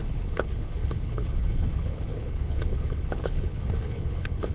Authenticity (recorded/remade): remade